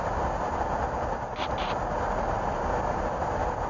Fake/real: real